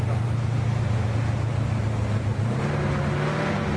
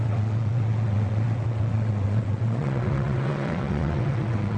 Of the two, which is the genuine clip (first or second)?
first